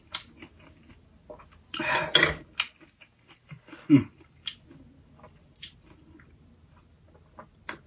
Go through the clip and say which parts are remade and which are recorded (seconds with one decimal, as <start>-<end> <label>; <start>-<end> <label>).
0.0-7.9 recorded